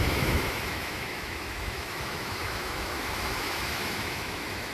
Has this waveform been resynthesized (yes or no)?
yes